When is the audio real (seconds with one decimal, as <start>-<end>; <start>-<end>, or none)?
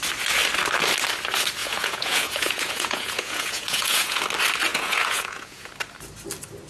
0.0-1.6; 4.2-4.7; 5.7-6.7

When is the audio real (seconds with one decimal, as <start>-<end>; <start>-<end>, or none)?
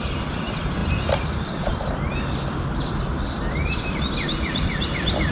0.0-5.3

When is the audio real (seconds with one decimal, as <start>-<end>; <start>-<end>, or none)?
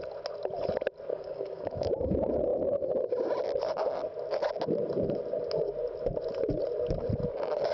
0.0-1.1; 1.9-7.7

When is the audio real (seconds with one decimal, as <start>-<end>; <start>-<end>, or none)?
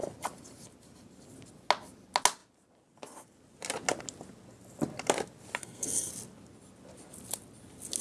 0.0-5.6; 6.1-8.0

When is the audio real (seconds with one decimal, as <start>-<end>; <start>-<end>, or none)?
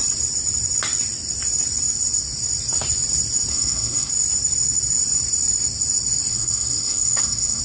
0.0-3.5; 4.1-6.3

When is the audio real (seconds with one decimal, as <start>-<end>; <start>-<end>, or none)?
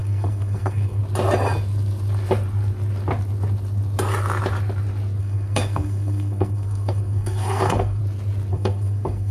1.0-5.2; 8.0-8.5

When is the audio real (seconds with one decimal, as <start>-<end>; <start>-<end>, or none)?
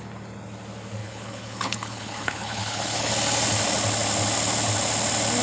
0.0-1.0; 3.1-5.4